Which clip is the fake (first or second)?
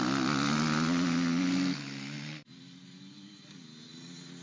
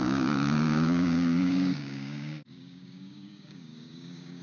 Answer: second